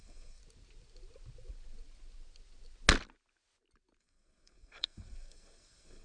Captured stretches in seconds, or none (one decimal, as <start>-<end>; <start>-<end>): 0.4-4.0